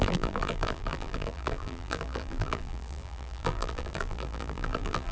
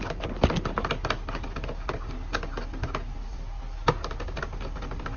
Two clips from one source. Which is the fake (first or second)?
first